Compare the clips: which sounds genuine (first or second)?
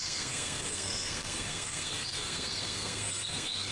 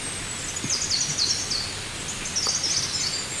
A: second